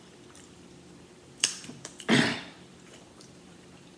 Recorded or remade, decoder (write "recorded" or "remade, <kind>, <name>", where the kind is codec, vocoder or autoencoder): remade, vocoder, BigVGAN v2